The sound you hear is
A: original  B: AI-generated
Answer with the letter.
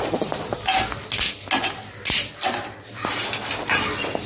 A